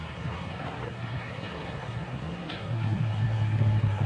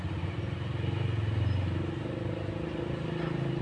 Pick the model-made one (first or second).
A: first